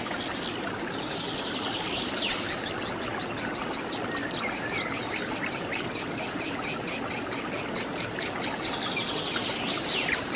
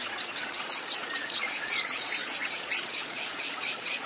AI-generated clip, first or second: second